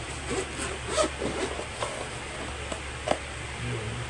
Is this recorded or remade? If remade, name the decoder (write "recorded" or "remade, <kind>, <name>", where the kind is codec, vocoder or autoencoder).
recorded